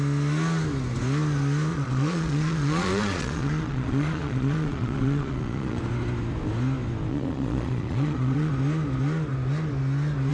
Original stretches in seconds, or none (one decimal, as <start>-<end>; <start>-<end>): 0.0-1.7; 5.8-7.1; 8.5-10.3